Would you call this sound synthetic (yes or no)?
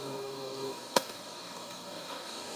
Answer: yes